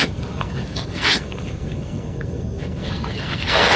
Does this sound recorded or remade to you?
remade